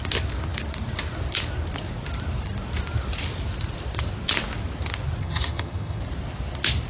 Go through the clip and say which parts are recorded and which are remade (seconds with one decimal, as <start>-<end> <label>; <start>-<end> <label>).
0.0-5.2 recorded; 5.2-6.0 remade; 6.0-6.9 recorded